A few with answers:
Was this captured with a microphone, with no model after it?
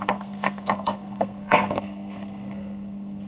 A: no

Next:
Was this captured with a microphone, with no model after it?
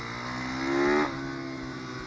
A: yes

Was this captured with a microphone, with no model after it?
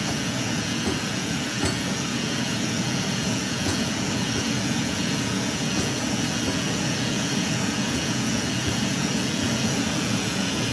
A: no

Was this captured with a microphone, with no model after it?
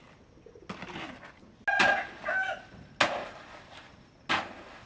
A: yes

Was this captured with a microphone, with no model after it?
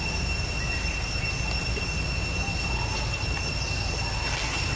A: yes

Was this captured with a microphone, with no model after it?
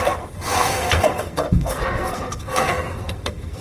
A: no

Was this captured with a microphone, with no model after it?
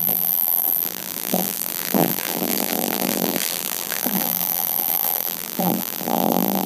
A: no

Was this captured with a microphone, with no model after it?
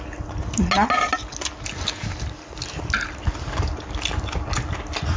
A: yes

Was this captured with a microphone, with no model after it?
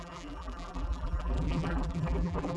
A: no